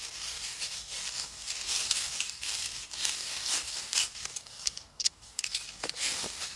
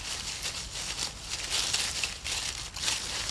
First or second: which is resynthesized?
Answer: first